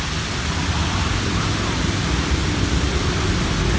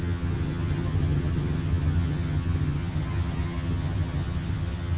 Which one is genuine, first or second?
first